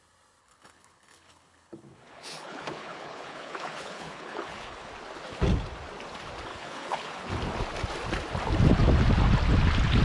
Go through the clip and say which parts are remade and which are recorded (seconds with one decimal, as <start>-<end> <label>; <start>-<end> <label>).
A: 0.0-0.4 recorded; 0.4-4.9 remade; 4.9-6.5 recorded; 6.5-7.3 remade; 7.3-10.0 recorded